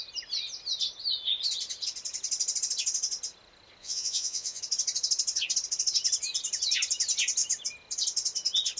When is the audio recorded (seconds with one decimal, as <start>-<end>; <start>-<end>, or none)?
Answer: 0.0-3.8; 4.6-8.8